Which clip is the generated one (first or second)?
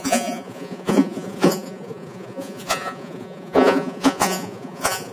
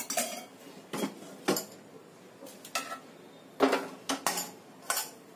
first